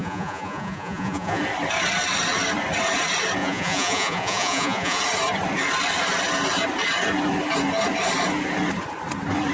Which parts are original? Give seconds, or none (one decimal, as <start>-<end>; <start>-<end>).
1.4-3.4; 5.0-9.5